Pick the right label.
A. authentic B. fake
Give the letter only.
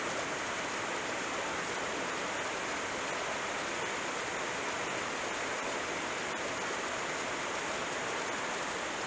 A